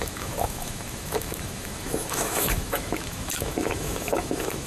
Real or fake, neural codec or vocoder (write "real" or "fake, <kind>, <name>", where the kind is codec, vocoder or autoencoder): fake, autoencoder, DAC-VAE